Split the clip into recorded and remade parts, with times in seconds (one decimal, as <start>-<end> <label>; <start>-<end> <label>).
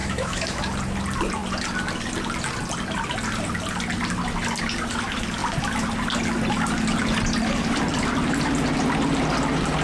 0.0-0.6 remade; 0.6-9.8 recorded